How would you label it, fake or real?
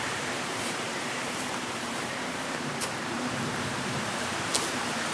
fake